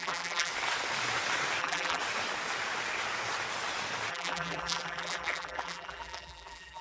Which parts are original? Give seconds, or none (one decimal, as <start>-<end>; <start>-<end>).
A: 0.5-1.6; 2.0-4.1